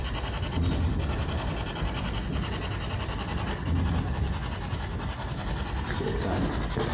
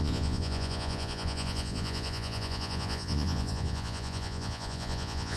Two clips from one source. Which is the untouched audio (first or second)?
first